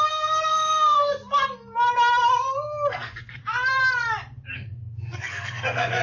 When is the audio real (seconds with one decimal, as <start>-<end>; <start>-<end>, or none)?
1.1-2.9; 3.4-4.5